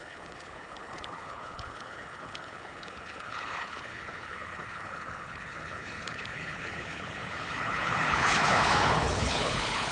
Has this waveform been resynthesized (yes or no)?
yes